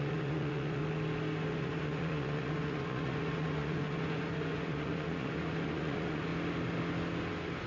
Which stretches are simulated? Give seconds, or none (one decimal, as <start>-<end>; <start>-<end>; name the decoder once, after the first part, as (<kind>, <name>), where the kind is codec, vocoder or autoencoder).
0.0-0.8 (vocoder, Vocos); 1.5-6.3